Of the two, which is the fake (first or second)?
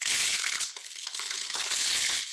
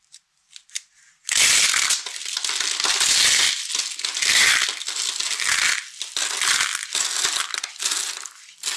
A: first